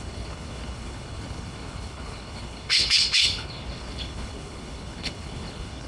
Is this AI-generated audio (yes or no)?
yes